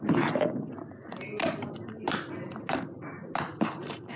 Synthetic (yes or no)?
no